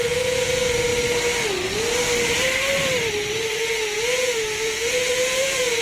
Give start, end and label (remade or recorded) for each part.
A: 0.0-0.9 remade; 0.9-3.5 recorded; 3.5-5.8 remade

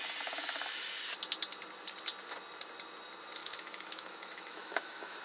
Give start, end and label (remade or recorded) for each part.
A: 0.0-3.4 recorded; 3.4-5.2 remade

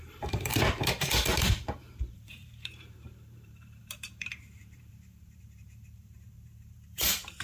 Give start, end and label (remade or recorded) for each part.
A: 0.0-7.4 remade

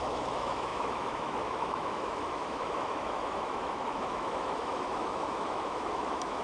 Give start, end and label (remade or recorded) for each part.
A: 0.0-6.4 remade